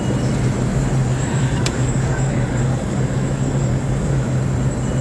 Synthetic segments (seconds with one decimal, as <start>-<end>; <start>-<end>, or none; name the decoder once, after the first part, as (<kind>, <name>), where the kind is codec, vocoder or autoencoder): 1.4-4.4 (codec, DAC)